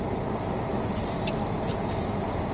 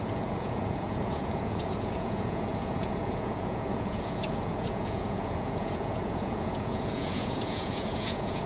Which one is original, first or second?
first